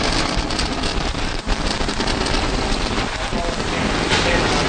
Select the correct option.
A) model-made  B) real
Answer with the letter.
B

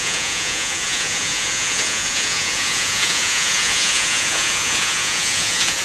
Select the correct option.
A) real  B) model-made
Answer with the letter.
B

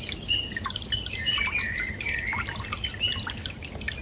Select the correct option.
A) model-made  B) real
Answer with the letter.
B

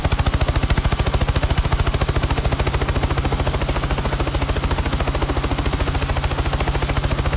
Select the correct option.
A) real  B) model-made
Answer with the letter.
A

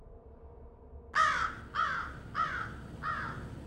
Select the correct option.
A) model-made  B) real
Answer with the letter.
B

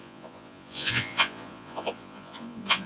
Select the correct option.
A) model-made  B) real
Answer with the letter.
A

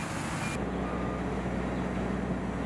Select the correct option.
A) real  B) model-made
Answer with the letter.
A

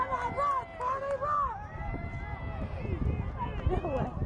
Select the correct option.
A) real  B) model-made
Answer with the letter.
A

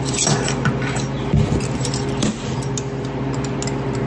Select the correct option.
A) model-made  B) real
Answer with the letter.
B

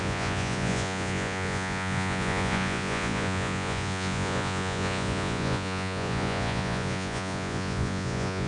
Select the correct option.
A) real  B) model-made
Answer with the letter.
B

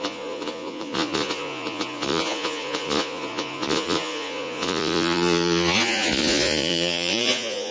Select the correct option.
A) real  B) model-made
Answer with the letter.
B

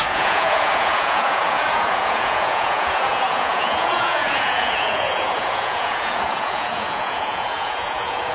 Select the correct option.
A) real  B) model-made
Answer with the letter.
B